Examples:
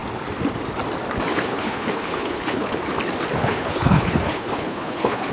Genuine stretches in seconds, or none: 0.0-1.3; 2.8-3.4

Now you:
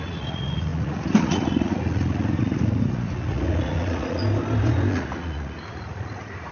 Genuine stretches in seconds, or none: 4.2-4.9